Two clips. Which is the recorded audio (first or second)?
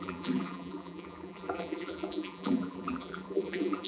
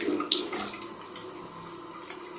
second